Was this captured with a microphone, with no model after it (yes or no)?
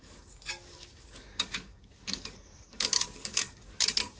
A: no